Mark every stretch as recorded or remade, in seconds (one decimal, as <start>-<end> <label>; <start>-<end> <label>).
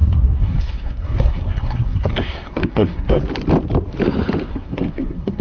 0.0-3.2 remade; 3.2-4.5 recorded; 4.5-5.4 remade